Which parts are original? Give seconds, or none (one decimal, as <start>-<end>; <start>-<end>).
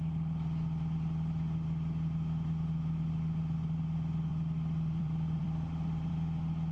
0.0-4.3; 6.1-6.7